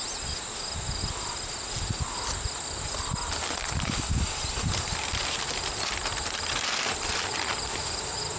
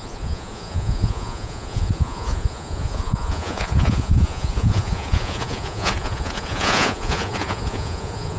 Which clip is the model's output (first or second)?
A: second